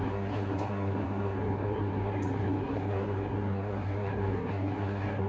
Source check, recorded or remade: remade